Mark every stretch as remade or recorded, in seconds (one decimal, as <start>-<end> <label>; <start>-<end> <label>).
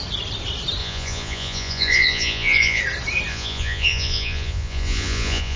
0.0-0.8 recorded; 0.8-2.8 remade; 2.8-3.3 recorded; 3.3-5.6 remade